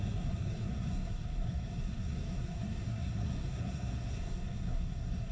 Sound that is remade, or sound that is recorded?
remade